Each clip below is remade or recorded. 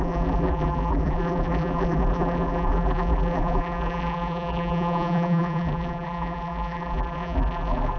remade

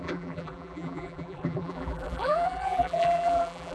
remade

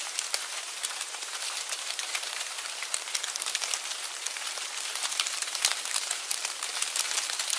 remade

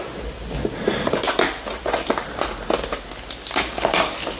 remade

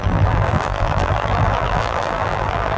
remade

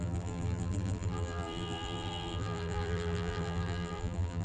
remade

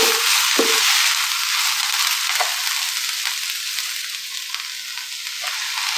recorded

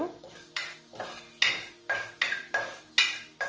recorded